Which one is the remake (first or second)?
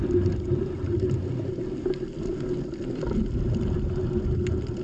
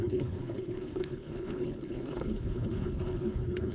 second